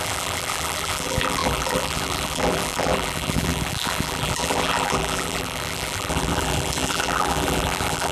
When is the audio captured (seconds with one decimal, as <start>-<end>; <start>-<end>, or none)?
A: none